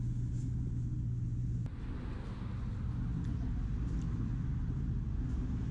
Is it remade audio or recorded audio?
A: recorded